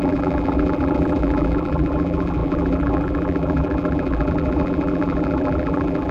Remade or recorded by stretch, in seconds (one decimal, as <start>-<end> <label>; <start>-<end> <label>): 0.0-6.1 remade